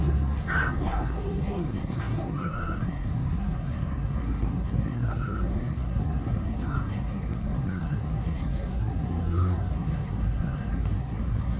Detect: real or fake fake